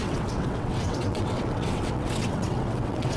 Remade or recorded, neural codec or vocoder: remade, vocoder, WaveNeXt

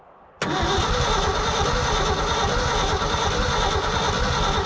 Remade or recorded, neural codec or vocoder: recorded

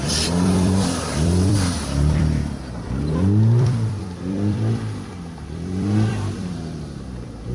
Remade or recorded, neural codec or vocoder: remade, vocoder, BigVGAN v2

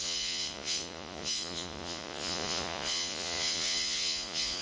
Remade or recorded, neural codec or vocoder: remade, vocoder, Vocos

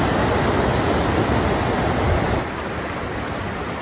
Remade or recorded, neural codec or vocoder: recorded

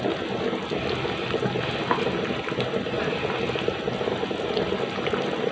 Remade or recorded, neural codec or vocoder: recorded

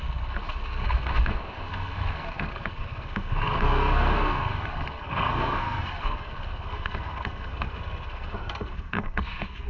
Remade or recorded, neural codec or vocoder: remade, codec, SNAC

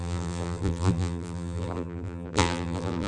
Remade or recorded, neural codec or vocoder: remade, vocoder, BigVGAN v2